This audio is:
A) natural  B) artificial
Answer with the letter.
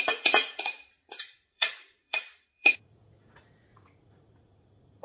B